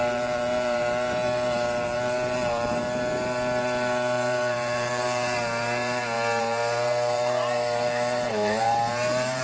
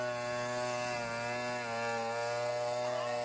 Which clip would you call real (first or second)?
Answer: second